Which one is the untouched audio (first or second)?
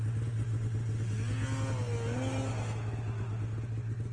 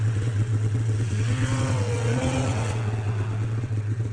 first